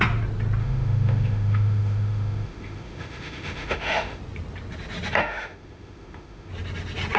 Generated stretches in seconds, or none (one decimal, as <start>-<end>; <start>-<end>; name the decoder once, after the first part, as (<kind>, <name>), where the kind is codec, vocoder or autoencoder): 0.6-4.2 (autoencoder, DAC-VAE); 5.2-6.5